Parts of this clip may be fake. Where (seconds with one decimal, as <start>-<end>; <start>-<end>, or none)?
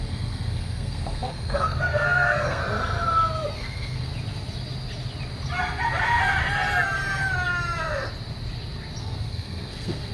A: 0.0-2.6; 3.5-4.1; 9.0-10.1